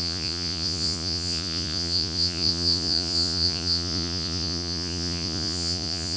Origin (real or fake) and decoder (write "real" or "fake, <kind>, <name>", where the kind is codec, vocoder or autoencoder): fake, vocoder, Vocos